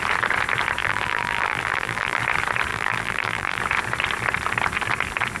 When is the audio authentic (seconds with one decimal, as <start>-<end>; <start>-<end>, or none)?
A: 0.0-0.8; 2.2-2.7; 3.6-5.4